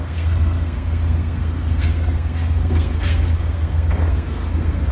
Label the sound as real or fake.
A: fake